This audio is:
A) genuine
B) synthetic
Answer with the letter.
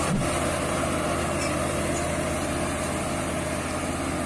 A